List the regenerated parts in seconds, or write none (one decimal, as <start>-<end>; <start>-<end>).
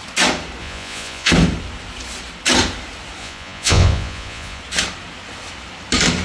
0.6-1.3; 3.2-4.6